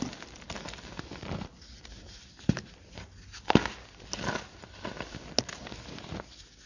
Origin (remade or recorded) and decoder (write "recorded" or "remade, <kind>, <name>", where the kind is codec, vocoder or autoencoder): recorded